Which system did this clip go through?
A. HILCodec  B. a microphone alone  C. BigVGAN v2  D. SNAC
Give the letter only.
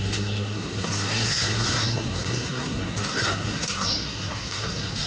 D